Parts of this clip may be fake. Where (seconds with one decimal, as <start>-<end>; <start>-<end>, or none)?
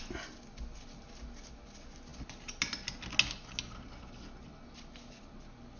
none